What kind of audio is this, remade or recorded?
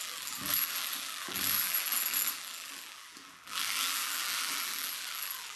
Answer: remade